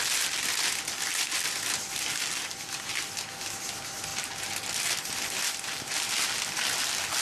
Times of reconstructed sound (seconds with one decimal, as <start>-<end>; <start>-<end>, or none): none